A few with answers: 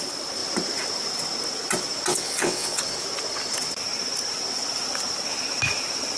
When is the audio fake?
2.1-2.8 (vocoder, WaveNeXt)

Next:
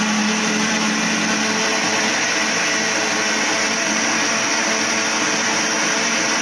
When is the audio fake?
none

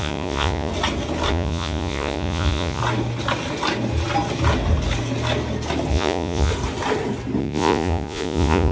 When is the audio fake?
0.0-0.7 (vocoder, Vocos); 1.3-2.8; 5.9-6.5; 7.4-8.7

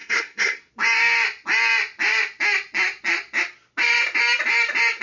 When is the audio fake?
0.0-0.7 (codec, SNAC)

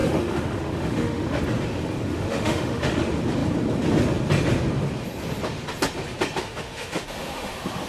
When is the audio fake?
0.0-1.4 (autoencoder, DAC-VAE); 2.1-3.0; 6.4-7.5